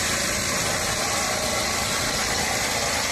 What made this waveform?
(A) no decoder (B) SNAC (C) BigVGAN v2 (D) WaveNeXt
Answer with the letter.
A